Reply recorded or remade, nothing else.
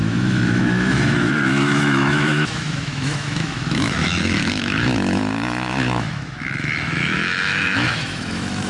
remade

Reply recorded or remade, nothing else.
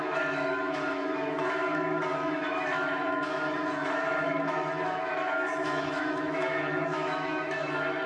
remade